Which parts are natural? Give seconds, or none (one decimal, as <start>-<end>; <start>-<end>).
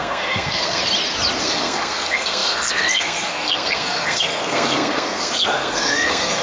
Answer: 0.8-1.4